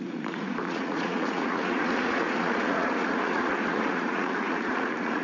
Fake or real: fake